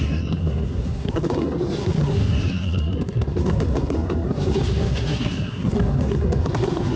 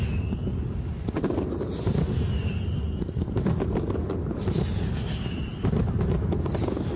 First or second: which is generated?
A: first